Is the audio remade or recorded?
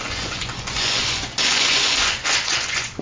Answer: remade